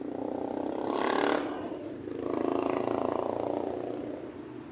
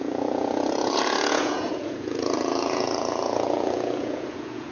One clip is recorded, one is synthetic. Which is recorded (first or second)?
first